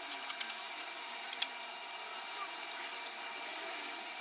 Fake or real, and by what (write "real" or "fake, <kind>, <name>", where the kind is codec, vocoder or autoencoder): real